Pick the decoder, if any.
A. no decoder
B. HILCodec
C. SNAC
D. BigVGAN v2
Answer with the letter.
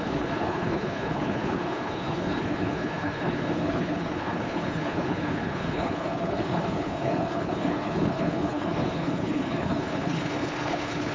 B